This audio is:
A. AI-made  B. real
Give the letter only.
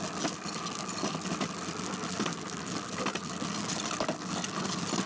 B